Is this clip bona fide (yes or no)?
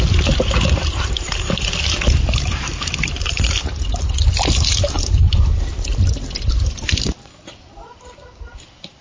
yes